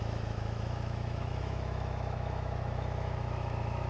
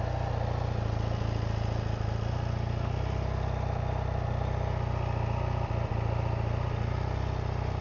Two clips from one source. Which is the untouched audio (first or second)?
second